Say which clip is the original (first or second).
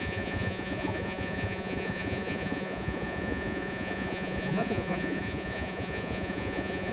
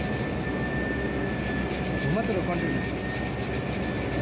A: second